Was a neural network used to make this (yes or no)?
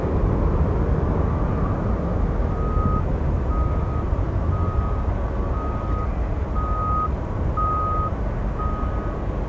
no